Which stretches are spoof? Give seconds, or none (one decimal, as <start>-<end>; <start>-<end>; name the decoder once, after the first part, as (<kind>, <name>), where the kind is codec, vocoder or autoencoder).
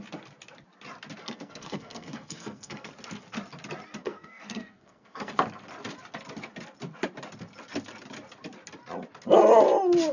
1.2-2.9 (codec, SNAC); 4.0-5.3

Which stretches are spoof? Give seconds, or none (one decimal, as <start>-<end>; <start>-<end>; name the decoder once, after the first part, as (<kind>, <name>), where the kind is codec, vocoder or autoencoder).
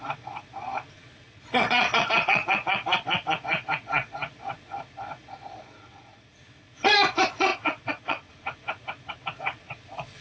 0.0-10.2 (vocoder, Vocos)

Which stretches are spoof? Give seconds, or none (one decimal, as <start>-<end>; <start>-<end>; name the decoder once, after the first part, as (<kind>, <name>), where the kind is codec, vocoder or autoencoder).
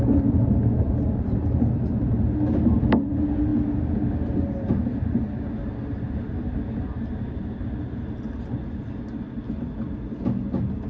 none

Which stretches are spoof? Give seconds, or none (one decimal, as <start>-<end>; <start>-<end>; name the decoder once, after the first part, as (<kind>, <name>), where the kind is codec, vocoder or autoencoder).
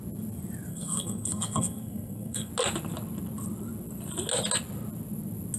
0.7-2.5 (codec, SNAC)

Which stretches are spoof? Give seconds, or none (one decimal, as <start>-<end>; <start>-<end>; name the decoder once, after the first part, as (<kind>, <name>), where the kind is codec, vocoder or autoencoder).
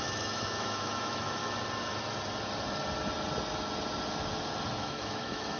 0.0-1.4 (autoencoder, DAC-VAE); 4.8-5.6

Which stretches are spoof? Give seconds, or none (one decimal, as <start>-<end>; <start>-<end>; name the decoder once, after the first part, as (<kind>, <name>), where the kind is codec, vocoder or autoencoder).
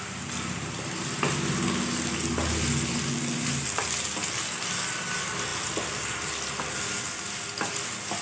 none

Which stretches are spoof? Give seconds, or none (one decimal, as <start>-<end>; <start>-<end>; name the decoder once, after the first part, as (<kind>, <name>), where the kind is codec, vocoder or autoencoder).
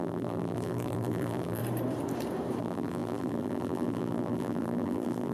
0.0-1.6 (vocoder, BigVGAN v2); 2.6-5.3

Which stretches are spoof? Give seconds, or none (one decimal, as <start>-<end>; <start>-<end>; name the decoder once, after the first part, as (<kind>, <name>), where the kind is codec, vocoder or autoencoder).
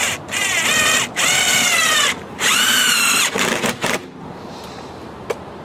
1.5-4.9 (vocoder, BigVGAN v2)